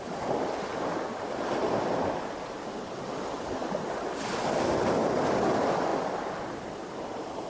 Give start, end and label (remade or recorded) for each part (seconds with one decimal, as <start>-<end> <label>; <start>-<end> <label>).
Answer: 0.0-7.5 recorded